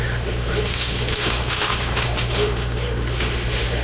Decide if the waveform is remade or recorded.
remade